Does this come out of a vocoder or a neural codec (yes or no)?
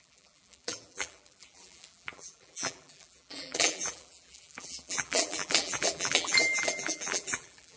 yes